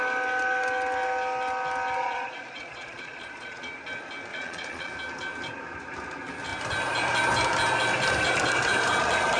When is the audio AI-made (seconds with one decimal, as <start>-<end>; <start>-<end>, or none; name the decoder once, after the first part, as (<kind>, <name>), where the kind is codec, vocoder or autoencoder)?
2.0-3.6 (vocoder, Vocos); 4.3-4.9